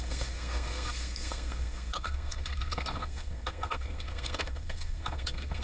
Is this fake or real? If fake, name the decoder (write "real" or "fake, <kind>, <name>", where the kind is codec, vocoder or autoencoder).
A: fake, codec, SNAC